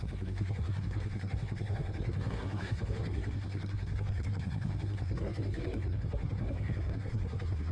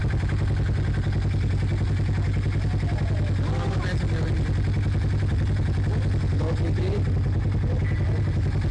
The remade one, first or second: first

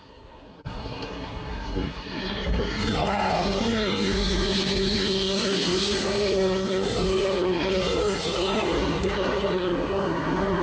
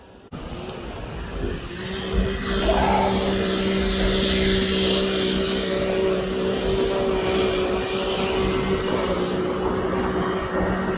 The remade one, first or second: first